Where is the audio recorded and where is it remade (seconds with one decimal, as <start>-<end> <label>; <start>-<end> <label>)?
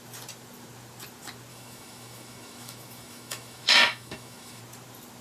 0.0-1.5 recorded; 1.5-4.6 remade; 4.6-5.2 recorded